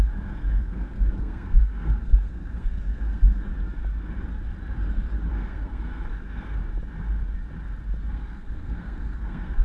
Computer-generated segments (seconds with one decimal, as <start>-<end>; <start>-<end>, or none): 0.0-3.5; 5.3-6.6; 8.1-9.6